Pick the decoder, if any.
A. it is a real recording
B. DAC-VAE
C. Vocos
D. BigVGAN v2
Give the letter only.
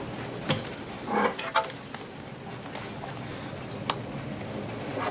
A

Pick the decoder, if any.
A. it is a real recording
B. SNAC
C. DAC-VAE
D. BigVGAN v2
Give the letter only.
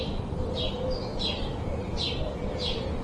A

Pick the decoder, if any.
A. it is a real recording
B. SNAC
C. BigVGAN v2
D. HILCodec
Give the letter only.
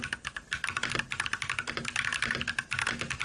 A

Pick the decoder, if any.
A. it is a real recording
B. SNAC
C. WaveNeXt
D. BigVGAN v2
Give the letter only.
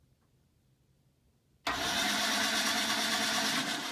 A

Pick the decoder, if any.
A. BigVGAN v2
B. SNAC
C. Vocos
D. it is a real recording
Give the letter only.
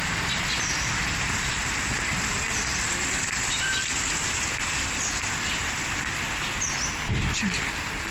A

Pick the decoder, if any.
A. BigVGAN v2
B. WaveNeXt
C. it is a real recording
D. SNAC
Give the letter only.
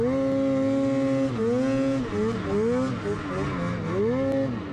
C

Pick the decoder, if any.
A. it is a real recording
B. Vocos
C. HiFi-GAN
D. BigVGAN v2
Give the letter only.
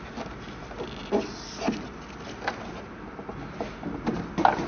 A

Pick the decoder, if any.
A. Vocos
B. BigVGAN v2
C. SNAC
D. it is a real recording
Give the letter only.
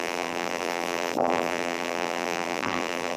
B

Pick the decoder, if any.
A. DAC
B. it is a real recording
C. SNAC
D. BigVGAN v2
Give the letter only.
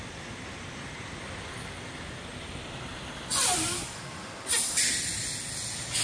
B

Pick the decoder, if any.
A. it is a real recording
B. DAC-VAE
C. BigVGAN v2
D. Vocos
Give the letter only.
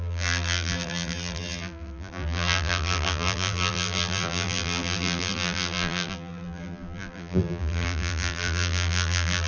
C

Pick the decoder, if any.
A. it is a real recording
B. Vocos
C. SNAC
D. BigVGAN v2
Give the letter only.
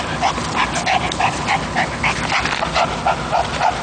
A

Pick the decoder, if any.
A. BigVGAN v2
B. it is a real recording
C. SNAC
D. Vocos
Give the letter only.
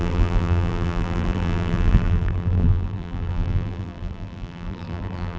A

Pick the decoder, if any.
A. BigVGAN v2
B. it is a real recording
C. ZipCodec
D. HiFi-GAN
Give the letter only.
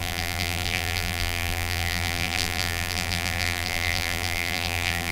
A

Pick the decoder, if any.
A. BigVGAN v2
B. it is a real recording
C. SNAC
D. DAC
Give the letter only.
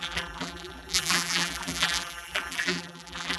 A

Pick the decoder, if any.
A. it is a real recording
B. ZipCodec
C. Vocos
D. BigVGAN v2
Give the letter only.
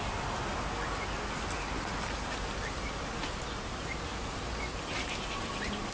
A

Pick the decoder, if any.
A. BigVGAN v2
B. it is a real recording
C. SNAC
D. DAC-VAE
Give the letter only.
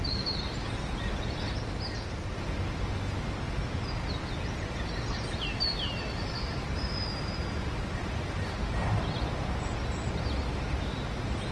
B